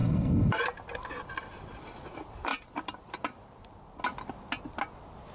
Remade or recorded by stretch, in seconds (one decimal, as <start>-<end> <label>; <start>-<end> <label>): 0.0-0.5 remade; 0.5-5.3 recorded